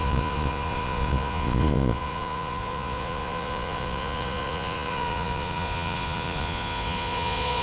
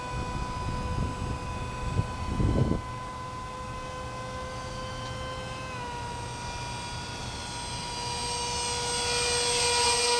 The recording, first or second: second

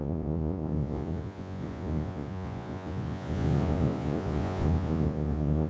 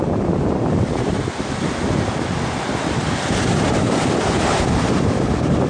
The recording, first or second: second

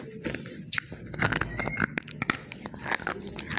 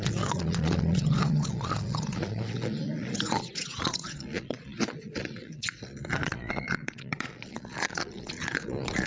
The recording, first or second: first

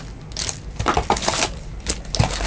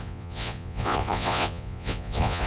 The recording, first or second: first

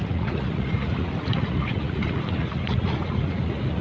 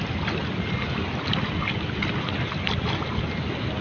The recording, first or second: second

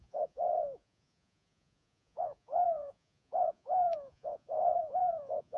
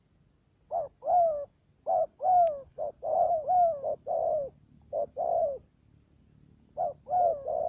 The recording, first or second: second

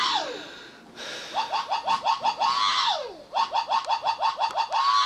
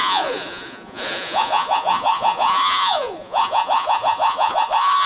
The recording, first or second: first